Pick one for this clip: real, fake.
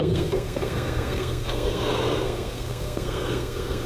fake